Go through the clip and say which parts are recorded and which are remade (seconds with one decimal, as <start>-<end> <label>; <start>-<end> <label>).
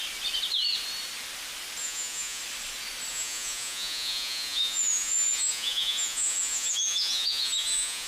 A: 0.0-1.8 recorded; 1.8-2.4 remade; 2.4-3.1 recorded; 3.1-8.1 remade